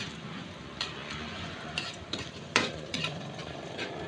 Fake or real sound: fake